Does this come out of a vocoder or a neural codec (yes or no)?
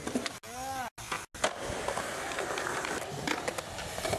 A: no